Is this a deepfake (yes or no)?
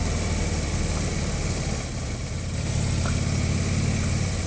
no